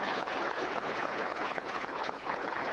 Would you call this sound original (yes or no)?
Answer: no